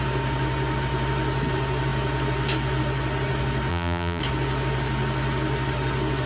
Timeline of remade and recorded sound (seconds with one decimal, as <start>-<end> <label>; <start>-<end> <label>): 0.0-3.7 recorded; 3.7-4.2 remade; 4.2-6.3 recorded